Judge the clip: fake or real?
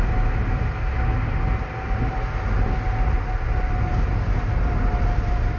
real